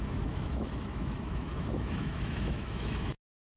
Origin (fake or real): fake